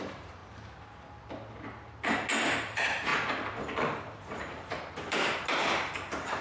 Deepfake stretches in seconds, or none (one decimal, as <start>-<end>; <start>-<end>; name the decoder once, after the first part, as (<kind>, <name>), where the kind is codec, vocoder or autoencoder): 0.0-0.4 (vocoder, BigVGAN v2); 2.5-6.4